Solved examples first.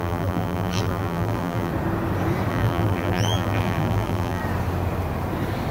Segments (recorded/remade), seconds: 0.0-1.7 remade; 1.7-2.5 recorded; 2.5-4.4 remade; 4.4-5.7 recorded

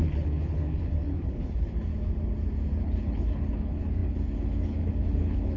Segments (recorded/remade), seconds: 0.0-1.9 remade; 1.9-2.8 recorded; 2.8-5.6 remade

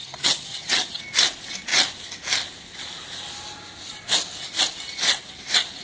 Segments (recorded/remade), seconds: 0.0-1.0 remade; 1.0-5.8 recorded

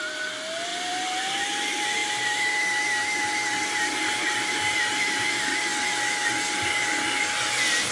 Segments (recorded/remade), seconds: 0.0-0.7 recorded; 0.7-1.2 remade; 1.2-7.9 recorded

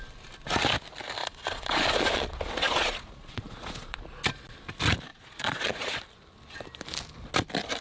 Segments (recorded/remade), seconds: 0.0-1.2 recorded; 1.2-4.0 remade; 4.0-5.1 recorded; 5.1-6.0 remade; 6.0-7.8 recorded